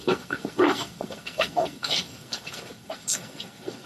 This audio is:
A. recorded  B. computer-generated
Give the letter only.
B